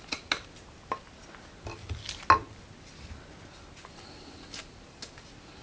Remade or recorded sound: recorded